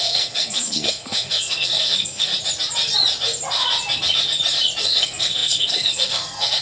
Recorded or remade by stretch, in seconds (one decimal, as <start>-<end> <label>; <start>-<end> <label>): 0.0-2.3 remade; 2.3-4.8 recorded; 4.8-6.6 remade